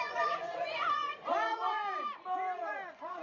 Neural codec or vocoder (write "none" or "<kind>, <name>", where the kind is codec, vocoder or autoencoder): vocoder, Vocos